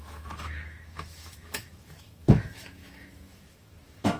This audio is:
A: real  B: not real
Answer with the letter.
B